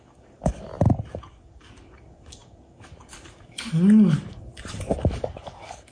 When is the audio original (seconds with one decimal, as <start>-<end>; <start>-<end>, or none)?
0.7-1.2